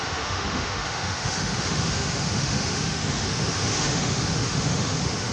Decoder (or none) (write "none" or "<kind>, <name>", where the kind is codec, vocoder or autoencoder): autoencoder, DAC-VAE